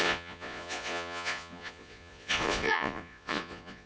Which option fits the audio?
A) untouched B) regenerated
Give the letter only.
B